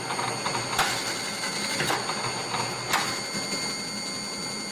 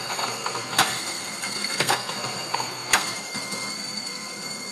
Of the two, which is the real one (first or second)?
first